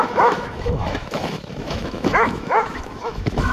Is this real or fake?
fake